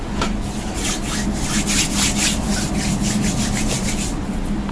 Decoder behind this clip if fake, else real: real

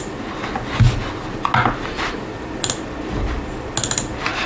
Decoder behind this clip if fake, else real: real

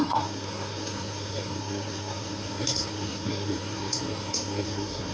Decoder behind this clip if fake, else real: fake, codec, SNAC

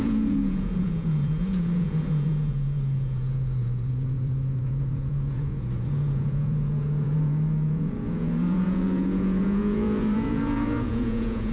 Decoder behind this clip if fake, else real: fake, vocoder, Vocos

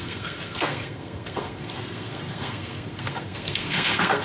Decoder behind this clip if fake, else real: fake, codec, SNAC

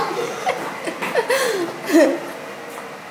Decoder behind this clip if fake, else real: real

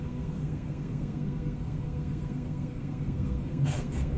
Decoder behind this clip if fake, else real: fake, codec, SNAC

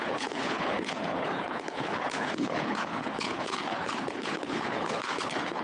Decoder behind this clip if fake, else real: fake, codec, HILCodec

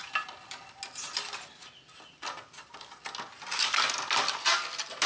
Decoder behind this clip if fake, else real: real